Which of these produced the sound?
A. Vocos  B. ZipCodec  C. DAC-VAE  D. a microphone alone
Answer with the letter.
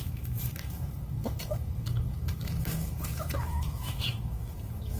C